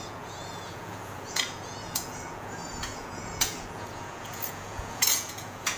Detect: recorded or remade remade